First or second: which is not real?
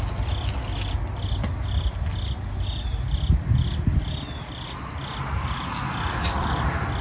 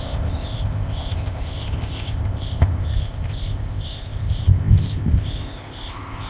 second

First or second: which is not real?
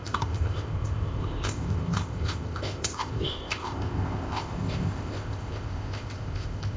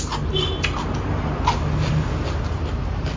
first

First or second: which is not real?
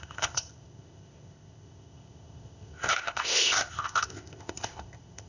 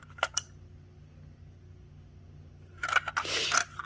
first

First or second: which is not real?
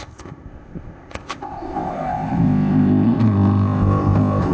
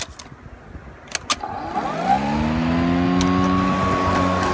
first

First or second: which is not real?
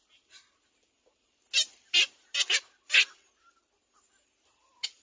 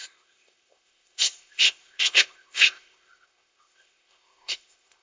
second